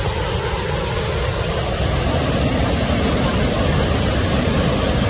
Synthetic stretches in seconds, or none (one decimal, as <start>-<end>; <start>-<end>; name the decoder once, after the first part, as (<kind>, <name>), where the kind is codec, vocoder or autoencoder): none

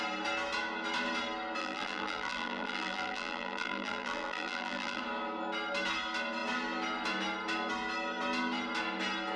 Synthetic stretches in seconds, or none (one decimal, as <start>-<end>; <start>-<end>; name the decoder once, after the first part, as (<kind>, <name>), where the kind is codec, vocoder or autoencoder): 1.6-5.0 (vocoder, BigVGAN v2)

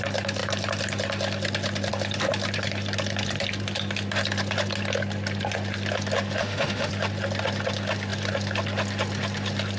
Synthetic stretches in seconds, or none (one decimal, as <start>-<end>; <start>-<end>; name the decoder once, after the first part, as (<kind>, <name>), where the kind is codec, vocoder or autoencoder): 6.4-6.9 (autoencoder, DAC-VAE)

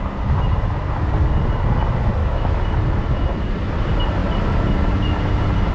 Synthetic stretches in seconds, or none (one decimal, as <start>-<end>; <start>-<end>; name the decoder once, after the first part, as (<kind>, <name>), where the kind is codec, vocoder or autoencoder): 2.2-2.7 (autoencoder, DAC-VAE)

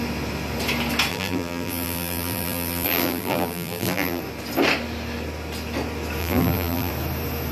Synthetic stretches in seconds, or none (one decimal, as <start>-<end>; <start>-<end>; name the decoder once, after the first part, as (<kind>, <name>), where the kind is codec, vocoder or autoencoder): 1.1-4.2 (vocoder, BigVGAN v2); 6.2-6.9

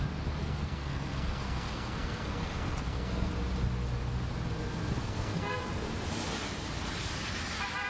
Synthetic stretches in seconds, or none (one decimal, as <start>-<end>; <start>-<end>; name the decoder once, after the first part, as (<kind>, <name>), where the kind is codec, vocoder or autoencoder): 0.4-3.3 (codec, SNAC); 5.0-5.6

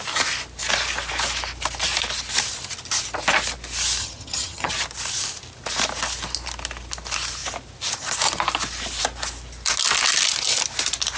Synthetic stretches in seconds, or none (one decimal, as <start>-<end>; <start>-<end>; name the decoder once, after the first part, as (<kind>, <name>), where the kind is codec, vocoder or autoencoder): 4.0-4.7 (vocoder, HiFi-GAN)